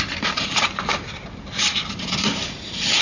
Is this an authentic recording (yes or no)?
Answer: no